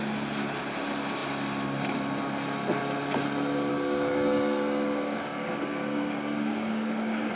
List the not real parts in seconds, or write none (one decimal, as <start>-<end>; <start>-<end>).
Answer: 3.7-7.3